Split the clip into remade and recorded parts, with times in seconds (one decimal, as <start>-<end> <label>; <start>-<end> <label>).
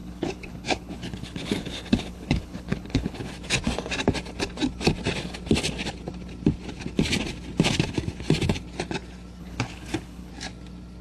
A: 0.0-3.3 remade; 3.3-9.4 recorded; 9.4-10.3 remade; 10.3-11.0 recorded